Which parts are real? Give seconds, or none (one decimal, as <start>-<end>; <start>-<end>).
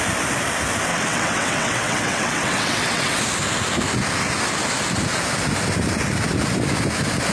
0.0-0.9; 3.2-7.3